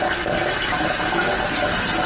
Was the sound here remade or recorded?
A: recorded